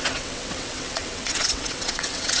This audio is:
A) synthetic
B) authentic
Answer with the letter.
A